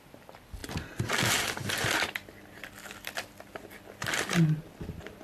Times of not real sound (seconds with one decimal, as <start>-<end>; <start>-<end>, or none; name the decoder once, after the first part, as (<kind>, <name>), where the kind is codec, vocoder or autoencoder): 0.6-3.7 (vocoder, BigVGAN v2)